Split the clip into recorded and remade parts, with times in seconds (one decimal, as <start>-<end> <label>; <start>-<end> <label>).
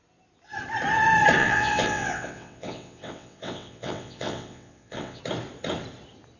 0.0-1.4 recorded; 1.4-5.2 remade; 5.2-6.4 recorded